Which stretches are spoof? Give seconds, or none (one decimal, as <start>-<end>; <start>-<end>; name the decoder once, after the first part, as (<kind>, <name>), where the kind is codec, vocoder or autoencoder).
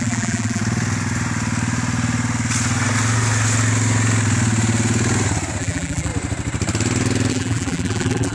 0.0-0.6 (vocoder, BigVGAN v2); 5.6-6.1; 7.3-8.3